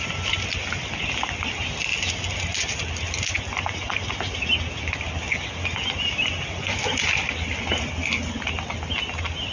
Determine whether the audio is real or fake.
real